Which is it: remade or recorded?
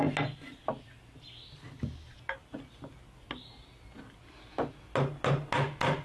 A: recorded